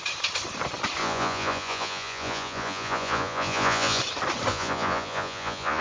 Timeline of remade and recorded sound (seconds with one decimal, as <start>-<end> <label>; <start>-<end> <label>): 0.0-1.0 recorded; 1.0-4.0 remade; 4.0-4.5 recorded; 4.5-5.8 remade